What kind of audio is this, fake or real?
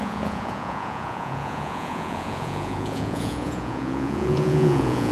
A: fake